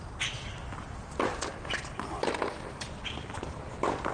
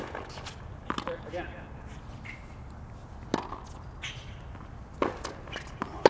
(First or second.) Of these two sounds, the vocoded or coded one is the first